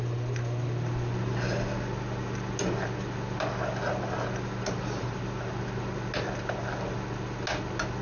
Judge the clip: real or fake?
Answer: real